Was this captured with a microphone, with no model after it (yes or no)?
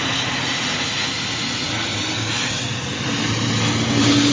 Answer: yes